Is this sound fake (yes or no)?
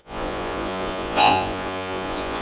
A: yes